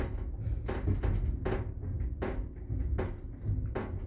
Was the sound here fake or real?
real